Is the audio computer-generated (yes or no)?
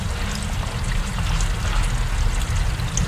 no